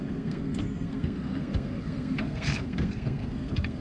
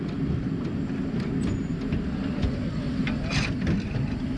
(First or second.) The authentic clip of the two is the second